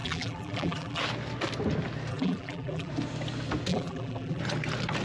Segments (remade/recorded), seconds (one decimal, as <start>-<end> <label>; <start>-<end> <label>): 0.0-1.0 remade; 1.0-2.1 recorded; 2.1-2.9 remade; 2.9-3.7 recorded; 3.7-4.4 remade; 4.4-5.0 recorded